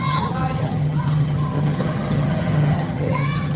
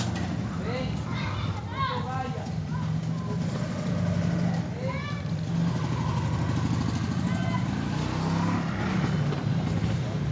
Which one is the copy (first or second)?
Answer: first